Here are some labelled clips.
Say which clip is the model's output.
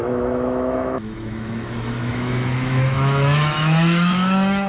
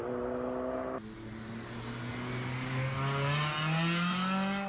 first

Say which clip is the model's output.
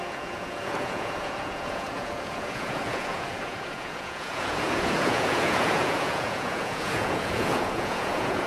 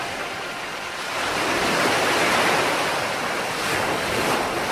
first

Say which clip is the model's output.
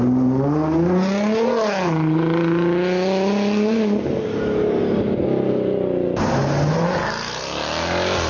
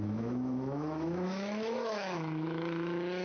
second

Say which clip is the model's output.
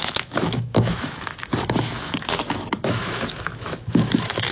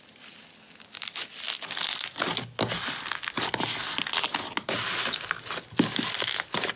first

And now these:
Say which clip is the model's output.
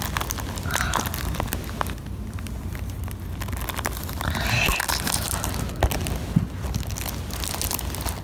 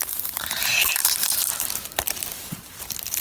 second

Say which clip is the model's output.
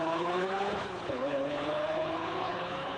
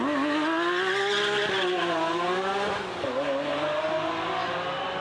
first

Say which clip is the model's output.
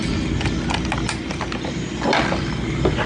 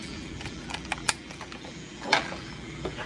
second